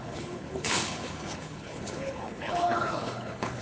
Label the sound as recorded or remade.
remade